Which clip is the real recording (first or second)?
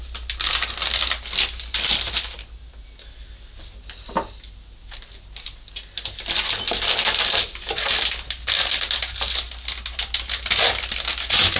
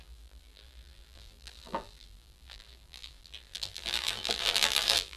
first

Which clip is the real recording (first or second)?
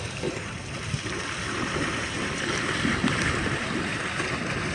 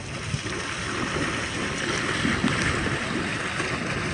second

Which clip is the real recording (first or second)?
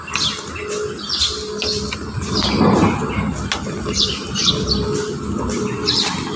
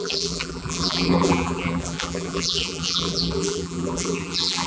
first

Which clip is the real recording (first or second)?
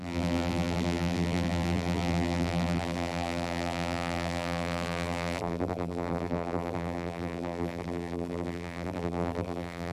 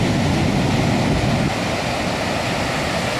second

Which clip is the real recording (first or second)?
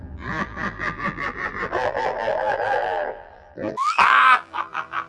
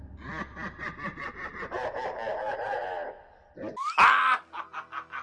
second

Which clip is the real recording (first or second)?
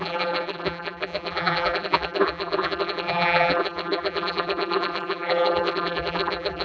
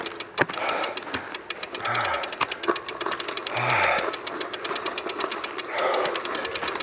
second